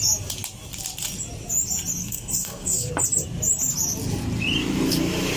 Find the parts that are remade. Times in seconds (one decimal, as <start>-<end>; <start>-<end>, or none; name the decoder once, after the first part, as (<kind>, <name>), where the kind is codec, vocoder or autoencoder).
2.0-2.9 (codec, SNAC)